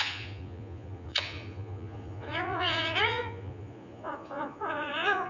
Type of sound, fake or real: fake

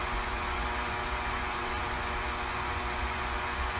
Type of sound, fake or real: fake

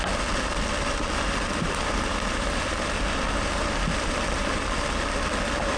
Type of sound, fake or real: real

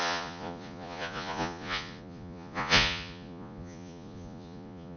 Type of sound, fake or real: fake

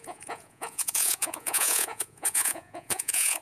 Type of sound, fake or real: fake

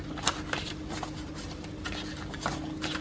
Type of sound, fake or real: real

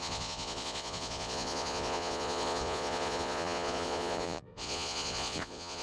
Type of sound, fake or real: fake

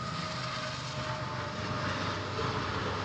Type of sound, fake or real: real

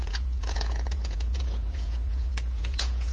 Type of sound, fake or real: fake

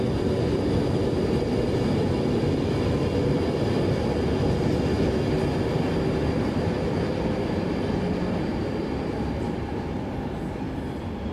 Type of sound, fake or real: real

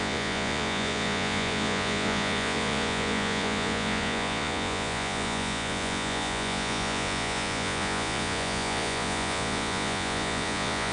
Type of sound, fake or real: fake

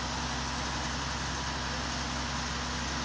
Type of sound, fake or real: real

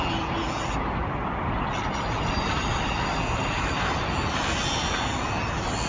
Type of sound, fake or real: real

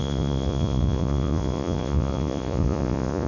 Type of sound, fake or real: fake